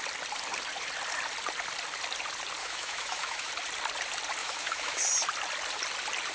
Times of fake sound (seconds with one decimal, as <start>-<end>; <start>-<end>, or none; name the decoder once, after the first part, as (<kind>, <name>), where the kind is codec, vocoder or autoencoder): 2.6-3.5 (autoencoder, DAC-VAE); 4.4-5.0